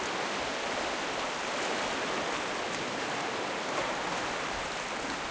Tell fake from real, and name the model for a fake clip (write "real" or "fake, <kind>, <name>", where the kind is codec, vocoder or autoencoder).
real